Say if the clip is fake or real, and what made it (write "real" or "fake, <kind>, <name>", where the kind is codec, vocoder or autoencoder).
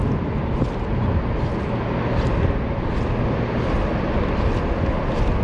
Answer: real